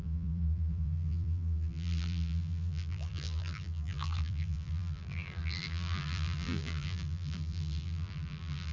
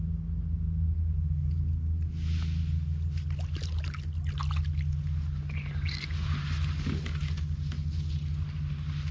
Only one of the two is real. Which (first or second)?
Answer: second